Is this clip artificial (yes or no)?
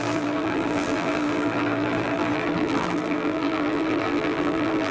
yes